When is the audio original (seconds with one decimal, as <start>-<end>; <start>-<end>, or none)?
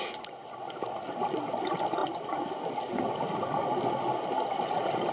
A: 0.0-5.1